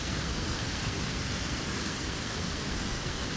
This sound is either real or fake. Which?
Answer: fake